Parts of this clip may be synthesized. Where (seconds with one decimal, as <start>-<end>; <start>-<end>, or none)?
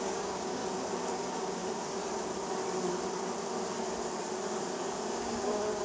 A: 0.0-0.6; 1.1-1.6; 5.1-5.8